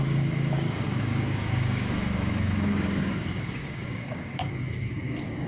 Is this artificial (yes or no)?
yes